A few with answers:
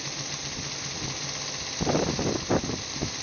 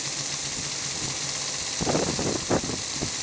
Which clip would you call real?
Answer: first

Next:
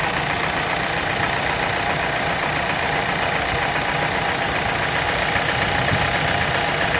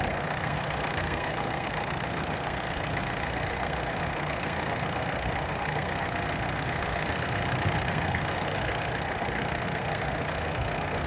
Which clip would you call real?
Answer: first